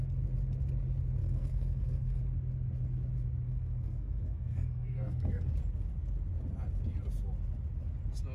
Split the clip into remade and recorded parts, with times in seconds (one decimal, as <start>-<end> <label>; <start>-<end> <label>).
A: 0.0-1.2 recorded; 1.2-2.2 remade; 2.2-3.5 recorded; 3.5-5.5 remade; 5.5-8.3 recorded